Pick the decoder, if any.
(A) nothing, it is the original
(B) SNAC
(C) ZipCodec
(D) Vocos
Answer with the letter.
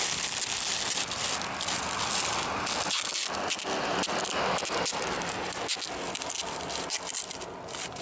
A